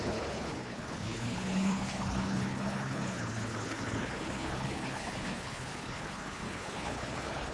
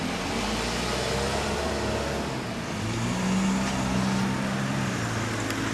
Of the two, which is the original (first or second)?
second